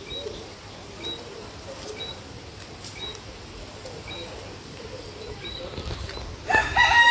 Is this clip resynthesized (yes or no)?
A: no